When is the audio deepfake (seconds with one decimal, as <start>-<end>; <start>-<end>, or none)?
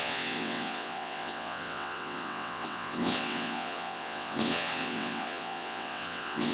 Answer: 0.0-6.5